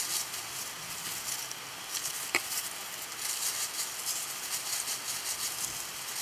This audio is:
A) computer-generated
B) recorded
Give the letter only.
B